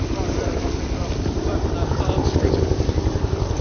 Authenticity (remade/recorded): recorded